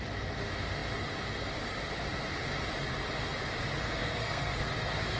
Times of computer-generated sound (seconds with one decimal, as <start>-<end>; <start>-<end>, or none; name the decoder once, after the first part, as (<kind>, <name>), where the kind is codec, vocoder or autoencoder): 4.0-4.7 (codec, SNAC)